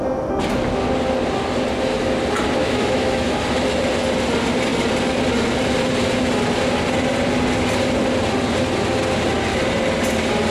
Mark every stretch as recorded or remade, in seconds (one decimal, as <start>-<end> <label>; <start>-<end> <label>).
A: 0.0-2.6 recorded; 2.6-3.4 remade; 3.4-10.5 recorded